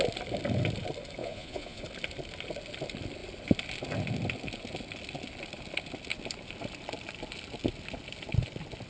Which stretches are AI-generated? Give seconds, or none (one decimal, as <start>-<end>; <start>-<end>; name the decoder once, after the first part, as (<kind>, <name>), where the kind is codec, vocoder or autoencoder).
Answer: 1.2-1.8 (vocoder, Vocos)